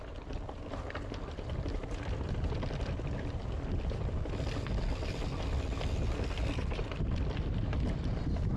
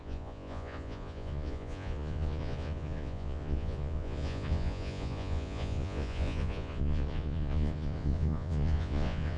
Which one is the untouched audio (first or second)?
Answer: first